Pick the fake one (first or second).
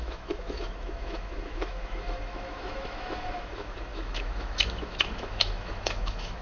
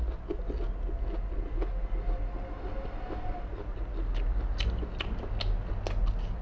first